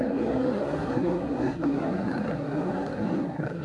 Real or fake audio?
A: fake